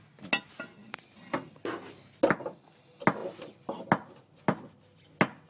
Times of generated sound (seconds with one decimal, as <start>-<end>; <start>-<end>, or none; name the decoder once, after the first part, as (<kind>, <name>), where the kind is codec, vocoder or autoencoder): none